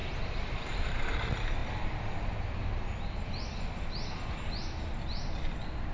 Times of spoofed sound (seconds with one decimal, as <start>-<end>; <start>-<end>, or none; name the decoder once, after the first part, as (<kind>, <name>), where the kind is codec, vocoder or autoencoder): 0.0-1.1 (vocoder, BigVGAN v2)